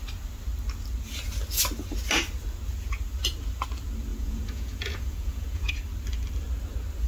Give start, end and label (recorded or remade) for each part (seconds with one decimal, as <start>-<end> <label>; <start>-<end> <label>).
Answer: 0.0-4.1 recorded; 4.1-5.7 remade; 5.7-7.1 recorded

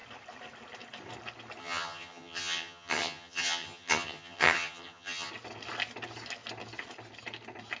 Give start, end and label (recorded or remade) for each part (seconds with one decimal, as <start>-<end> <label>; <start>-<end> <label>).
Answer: 0.0-1.6 recorded; 1.6-5.3 remade; 5.3-7.8 recorded